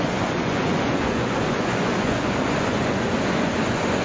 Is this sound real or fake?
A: fake